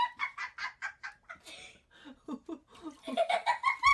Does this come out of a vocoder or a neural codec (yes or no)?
no